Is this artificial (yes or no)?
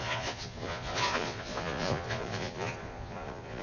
yes